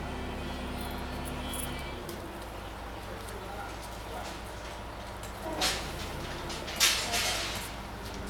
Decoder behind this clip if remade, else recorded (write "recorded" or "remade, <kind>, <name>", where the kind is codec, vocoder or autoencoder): recorded